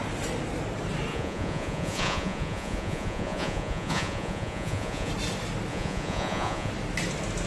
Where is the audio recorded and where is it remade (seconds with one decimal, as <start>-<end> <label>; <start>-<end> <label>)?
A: 0.0-1.1 recorded; 1.1-5.1 remade; 5.1-5.7 recorded; 5.7-6.7 remade; 6.7-7.5 recorded